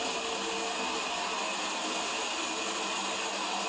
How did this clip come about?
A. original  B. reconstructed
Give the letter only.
A